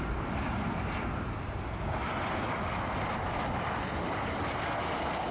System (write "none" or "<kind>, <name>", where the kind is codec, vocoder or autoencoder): none